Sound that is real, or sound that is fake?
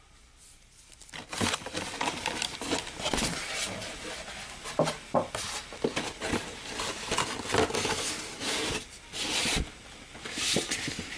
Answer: real